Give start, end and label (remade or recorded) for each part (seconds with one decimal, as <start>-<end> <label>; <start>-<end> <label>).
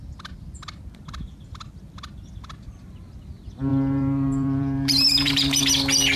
0.0-3.7 recorded; 3.7-5.6 remade; 5.6-6.2 recorded